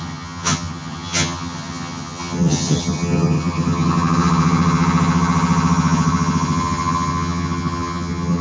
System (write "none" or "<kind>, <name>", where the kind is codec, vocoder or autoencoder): vocoder, HiFi-GAN